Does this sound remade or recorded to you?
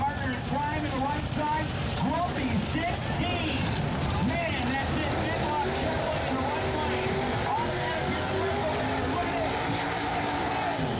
recorded